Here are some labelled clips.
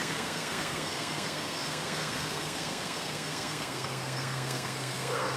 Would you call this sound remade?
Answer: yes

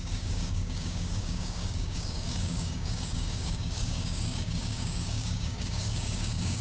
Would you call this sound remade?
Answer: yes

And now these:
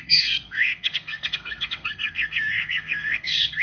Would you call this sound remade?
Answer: yes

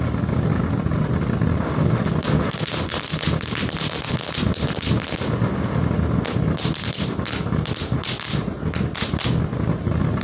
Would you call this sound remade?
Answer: no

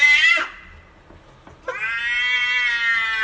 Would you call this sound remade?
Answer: no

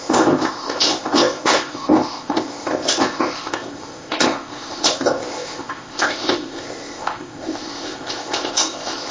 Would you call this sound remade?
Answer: yes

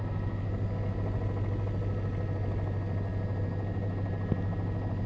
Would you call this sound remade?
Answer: no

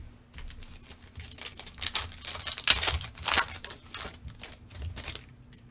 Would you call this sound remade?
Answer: no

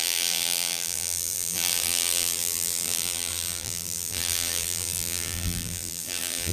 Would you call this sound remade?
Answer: yes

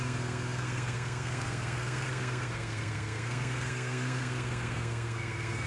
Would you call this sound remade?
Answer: yes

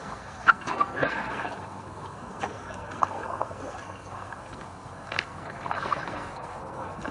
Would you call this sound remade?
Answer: yes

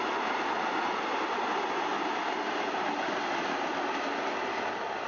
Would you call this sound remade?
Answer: no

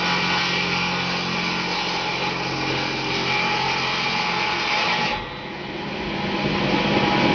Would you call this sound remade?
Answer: no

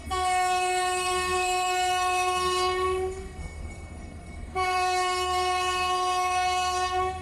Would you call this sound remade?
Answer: yes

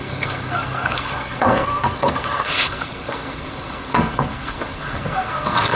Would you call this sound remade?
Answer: yes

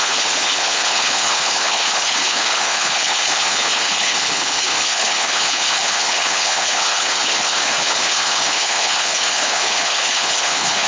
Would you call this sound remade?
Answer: yes